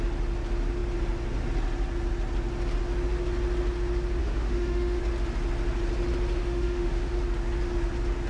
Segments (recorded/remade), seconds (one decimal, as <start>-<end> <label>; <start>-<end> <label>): 0.0-4.2 recorded; 4.2-5.0 remade; 5.0-6.4 recorded; 6.4-7.1 remade; 7.1-8.3 recorded